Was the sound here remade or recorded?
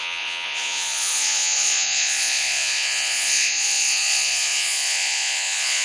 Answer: remade